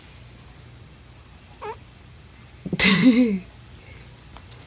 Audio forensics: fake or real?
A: real